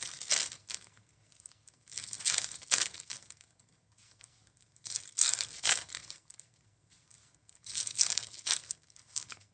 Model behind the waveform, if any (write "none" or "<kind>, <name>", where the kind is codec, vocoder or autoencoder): codec, SNAC